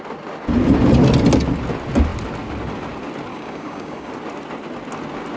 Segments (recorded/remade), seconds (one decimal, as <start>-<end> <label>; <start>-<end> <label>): 0.0-3.3 recorded; 3.3-4.1 remade; 4.1-5.4 recorded